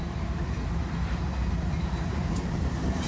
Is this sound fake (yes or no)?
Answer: yes